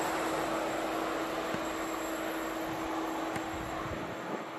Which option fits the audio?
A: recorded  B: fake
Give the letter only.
A